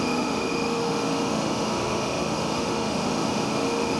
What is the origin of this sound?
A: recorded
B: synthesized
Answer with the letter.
B